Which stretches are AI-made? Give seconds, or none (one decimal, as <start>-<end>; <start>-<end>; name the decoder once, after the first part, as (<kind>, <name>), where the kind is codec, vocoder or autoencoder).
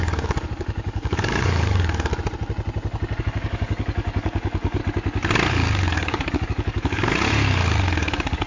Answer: 0.0-2.1 (codec, DAC); 3.2-4.8; 5.5-8.5